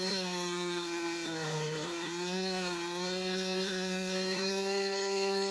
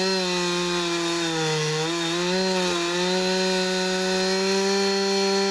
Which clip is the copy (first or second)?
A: first